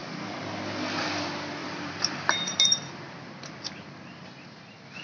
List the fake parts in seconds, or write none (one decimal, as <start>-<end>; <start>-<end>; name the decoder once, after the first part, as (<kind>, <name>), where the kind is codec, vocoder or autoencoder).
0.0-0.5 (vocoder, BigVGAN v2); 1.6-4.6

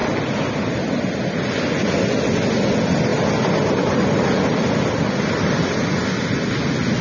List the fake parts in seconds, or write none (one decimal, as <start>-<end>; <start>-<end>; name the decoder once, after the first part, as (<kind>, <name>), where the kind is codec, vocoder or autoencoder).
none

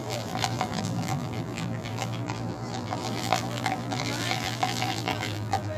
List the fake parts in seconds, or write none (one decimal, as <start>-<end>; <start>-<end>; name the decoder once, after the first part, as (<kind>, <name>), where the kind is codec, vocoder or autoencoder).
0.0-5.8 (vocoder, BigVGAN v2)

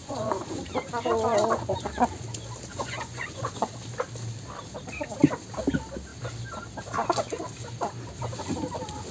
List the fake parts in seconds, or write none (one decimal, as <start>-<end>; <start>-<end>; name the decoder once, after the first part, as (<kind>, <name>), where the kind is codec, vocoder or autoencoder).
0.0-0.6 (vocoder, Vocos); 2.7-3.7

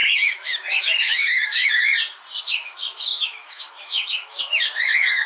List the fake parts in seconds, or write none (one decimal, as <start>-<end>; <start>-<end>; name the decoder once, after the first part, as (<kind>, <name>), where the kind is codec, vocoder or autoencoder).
0.0-1.9 (autoencoder, DAC-VAE); 2.4-5.3

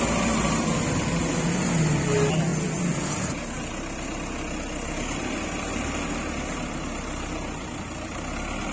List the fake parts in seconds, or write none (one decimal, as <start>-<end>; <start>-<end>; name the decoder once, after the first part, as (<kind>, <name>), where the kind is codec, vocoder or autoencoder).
none